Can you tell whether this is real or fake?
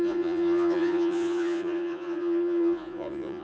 fake